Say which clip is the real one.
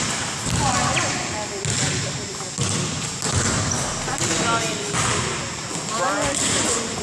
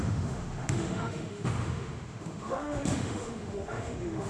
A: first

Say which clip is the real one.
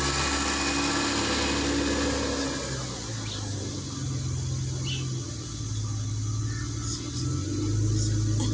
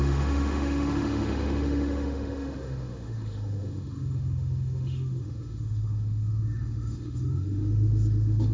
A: first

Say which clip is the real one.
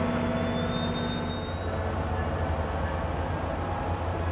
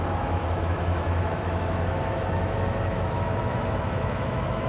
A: first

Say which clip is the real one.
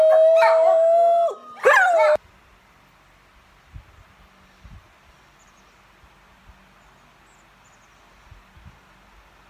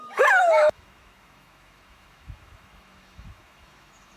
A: first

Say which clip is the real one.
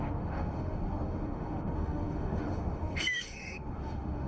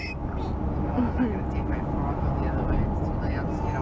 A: second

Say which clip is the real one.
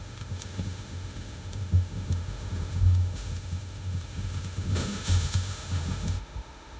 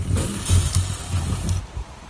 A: second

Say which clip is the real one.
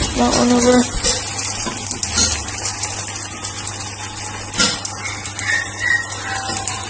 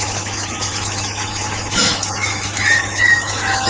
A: first